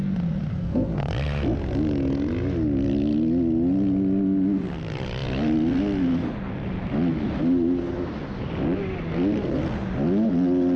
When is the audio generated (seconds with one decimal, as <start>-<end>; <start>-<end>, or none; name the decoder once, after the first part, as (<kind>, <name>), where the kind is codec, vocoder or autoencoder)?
0.5-1.0 (codec, SNAC)

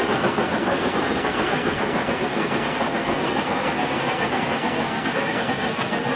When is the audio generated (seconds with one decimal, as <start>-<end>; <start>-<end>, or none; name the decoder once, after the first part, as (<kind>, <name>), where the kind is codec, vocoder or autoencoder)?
0.0-6.2 (codec, SNAC)

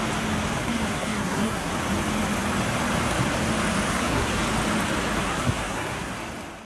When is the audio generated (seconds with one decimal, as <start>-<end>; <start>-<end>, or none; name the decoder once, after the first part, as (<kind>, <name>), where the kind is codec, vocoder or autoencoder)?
0.6-1.7 (codec, SNAC); 3.9-4.4; 5.2-6.1

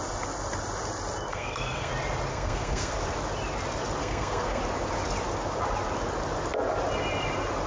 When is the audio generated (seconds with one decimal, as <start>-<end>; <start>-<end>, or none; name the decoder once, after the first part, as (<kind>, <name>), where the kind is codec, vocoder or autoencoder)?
1.3-1.9 (codec, SNAC); 2.3-2.9; 4.0-4.6

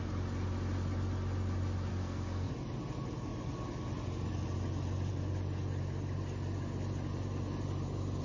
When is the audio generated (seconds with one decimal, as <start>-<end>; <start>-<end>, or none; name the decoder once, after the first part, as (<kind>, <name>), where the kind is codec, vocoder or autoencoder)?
1.9-2.5 (codec, SNAC)

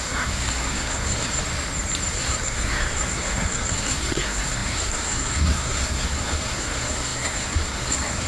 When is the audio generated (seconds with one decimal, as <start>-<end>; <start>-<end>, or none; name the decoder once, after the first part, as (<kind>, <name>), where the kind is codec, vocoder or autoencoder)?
0.0-1.3 (codec, SNAC); 2.1-8.3

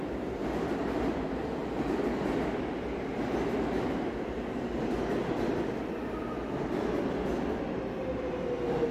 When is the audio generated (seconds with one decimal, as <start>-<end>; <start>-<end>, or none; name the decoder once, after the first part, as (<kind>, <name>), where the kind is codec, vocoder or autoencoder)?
none

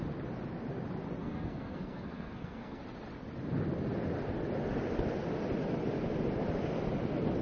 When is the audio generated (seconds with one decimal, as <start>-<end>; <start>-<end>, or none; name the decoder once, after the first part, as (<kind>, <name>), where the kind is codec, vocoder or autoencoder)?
1.2-2.8 (codec, SNAC)